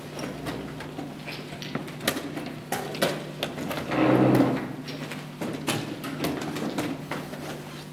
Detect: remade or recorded recorded